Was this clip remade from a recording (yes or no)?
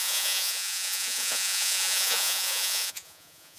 yes